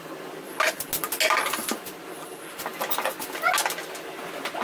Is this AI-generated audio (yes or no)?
no